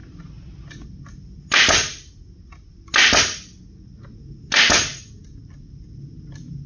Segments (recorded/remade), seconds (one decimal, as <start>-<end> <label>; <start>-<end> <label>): 0.0-6.7 recorded